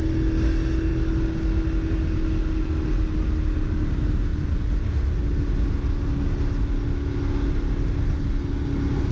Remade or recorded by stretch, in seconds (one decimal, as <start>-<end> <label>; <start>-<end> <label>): 0.0-9.1 recorded